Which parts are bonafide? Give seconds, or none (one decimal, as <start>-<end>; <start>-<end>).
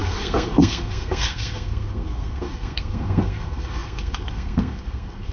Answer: none